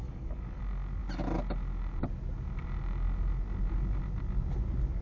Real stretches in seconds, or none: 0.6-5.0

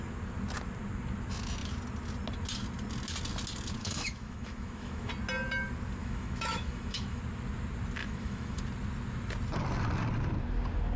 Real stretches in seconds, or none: 0.0-3.8; 5.1-6.0; 7.2-8.0; 8.6-11.0

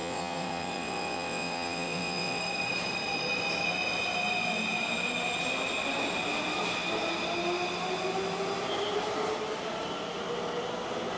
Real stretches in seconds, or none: 2.4-11.2

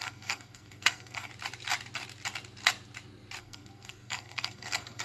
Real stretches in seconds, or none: 1.3-3.4

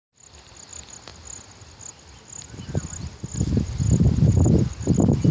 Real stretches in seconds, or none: 0.0-5.3

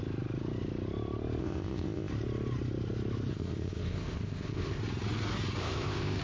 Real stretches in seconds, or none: 0.0-1.4; 2.1-3.3; 4.8-5.6

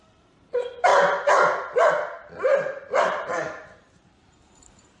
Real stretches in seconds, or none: 0.9-3.0

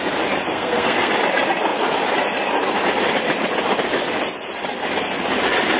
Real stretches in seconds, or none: 0.0-0.5; 1.1-5.8